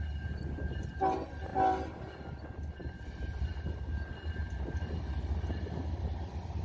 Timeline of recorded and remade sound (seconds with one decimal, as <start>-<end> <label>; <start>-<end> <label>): 0.0-6.6 recorded